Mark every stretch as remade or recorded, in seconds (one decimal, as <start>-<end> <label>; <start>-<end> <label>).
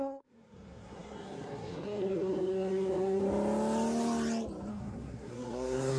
0.0-3.2 remade; 3.2-4.7 recorded; 4.7-6.0 remade